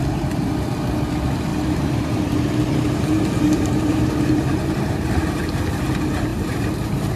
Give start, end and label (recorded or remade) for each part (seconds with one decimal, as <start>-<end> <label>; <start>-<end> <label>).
0.0-1.5 recorded; 1.5-5.8 remade; 5.8-6.3 recorded; 6.3-7.2 remade